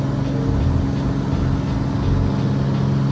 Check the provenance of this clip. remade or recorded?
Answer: recorded